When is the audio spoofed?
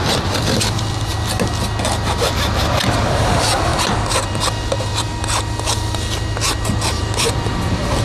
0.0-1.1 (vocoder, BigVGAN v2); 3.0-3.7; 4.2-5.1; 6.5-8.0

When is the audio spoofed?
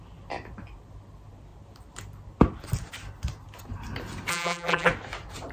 4.3-4.9 (vocoder, BigVGAN v2)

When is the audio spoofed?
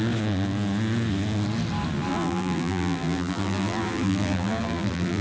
2.1-5.2 (vocoder, BigVGAN v2)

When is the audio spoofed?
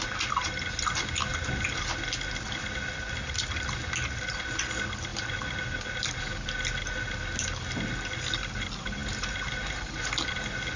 none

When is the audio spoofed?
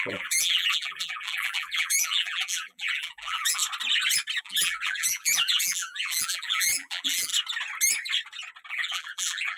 0.0-3.6 (vocoder, BigVGAN v2); 4.4-7.3; 8.7-9.6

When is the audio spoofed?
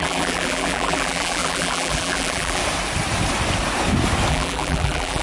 0.0-2.6 (vocoder, BigVGAN v2); 4.3-5.2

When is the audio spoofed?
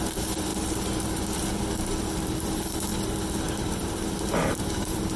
0.0-0.5 (vocoder, BigVGAN v2); 2.4-2.9; 3.8-5.2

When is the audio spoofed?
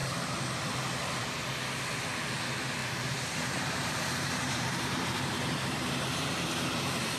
2.8-7.2 (vocoder, BigVGAN v2)